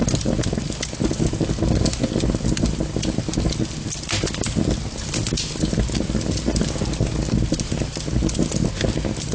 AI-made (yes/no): no